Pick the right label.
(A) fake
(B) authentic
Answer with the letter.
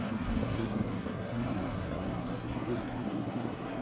A